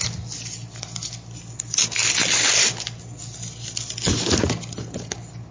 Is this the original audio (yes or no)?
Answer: yes